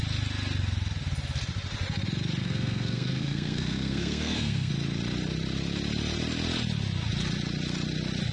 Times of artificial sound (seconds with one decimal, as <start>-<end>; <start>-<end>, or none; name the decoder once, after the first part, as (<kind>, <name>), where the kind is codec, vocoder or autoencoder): 2.4-4.7 (codec, SNAC)